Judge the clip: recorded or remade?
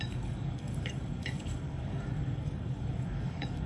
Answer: remade